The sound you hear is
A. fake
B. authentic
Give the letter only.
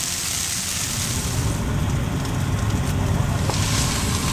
B